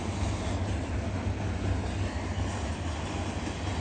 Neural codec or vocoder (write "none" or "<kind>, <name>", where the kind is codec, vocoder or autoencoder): none